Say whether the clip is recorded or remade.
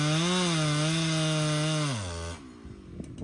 recorded